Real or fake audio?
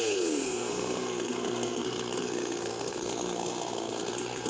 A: fake